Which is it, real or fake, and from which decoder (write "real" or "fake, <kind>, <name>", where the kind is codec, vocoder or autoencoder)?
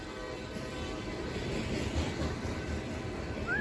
fake, vocoder, BigVGAN v2